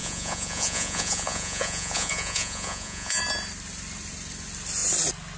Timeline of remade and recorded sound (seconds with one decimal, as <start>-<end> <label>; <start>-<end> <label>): 0.0-3.2 remade; 3.2-5.4 recorded

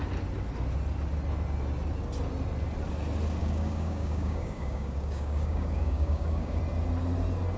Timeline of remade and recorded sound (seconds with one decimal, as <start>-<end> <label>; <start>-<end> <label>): 0.0-3.4 recorded; 3.4-6.6 remade; 6.6-7.6 recorded

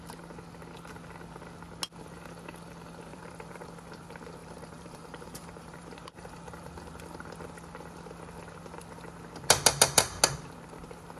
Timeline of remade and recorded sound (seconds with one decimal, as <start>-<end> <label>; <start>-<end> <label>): 0.0-3.1 recorded; 3.1-3.7 remade; 3.7-4.4 recorded; 4.4-6.3 remade; 6.3-11.2 recorded

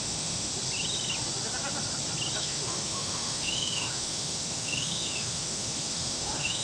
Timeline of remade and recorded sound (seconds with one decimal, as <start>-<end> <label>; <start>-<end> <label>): 0.0-0.5 remade; 0.5-2.4 recorded; 2.4-6.6 remade

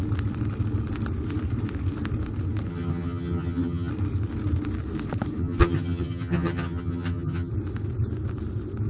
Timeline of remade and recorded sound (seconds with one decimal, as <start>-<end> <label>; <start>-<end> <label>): 0.0-2.7 recorded; 2.7-3.9 remade; 3.9-5.4 recorded; 5.4-7.5 remade; 7.5-8.9 recorded

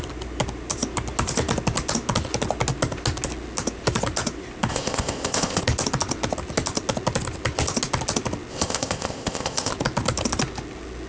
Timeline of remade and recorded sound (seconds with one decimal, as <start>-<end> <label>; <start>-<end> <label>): 0.0-4.7 recorded; 4.7-5.6 remade; 5.6-8.5 recorded; 8.5-9.7 remade; 9.7-11.1 recorded